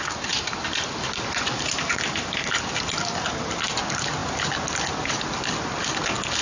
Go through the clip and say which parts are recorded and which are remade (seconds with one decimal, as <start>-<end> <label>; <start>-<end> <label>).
0.0-6.4 recorded